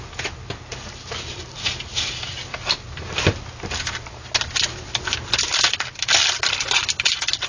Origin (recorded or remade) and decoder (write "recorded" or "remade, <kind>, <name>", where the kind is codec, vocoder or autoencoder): recorded